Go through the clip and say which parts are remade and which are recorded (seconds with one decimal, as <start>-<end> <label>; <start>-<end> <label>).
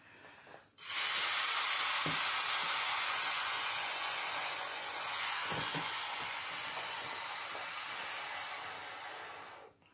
0.0-2.6 recorded; 2.6-7.1 remade; 7.1-9.9 recorded